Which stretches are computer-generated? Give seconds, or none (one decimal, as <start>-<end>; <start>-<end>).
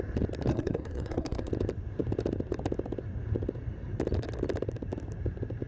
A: 0.5-1.5